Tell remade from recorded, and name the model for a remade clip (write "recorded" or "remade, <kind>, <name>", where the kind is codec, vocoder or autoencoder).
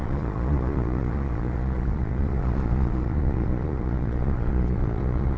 remade, vocoder, Vocos